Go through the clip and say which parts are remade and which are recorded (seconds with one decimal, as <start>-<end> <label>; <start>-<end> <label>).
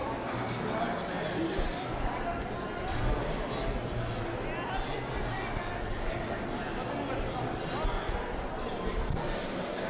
0.0-9.9 recorded